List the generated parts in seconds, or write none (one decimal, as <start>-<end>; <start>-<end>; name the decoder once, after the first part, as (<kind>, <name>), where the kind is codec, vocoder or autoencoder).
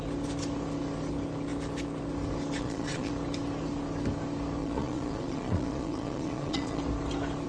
2.6-3.1 (vocoder, Vocos); 4.6-6.8